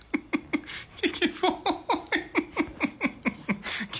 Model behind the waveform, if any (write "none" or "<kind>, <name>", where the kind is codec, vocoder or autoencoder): none